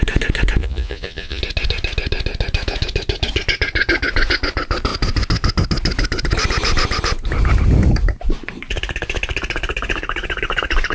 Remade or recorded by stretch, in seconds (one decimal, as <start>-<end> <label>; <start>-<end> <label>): 0.0-0.6 recorded; 0.6-1.4 remade; 1.4-10.9 recorded